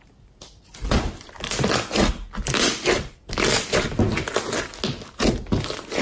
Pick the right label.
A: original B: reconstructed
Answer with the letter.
A